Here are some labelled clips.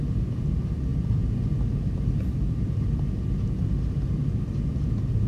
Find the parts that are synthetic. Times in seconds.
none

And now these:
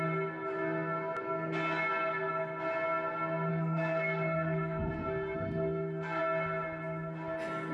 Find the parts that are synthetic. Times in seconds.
3.5-6.2 (codec, SNAC)